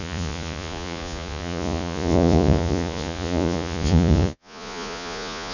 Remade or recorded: remade